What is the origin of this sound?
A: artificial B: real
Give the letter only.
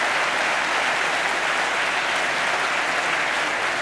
B